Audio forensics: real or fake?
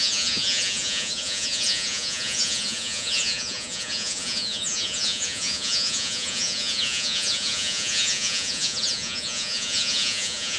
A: fake